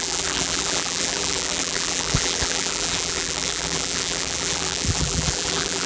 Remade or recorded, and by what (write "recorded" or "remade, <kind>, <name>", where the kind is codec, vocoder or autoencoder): remade, vocoder, BigVGAN v2